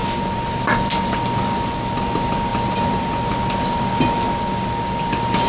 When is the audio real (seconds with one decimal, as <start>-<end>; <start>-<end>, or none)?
0.0-2.5; 3.9-5.5